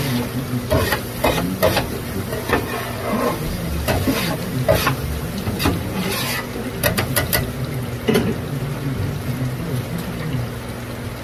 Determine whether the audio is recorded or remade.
recorded